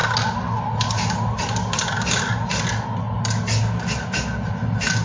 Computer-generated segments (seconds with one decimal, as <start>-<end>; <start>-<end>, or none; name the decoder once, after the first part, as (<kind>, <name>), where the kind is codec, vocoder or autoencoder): none